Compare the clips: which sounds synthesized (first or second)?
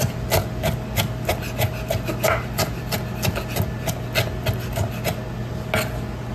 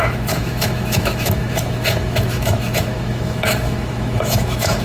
second